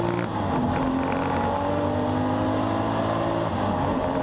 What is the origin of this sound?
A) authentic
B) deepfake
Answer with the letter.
A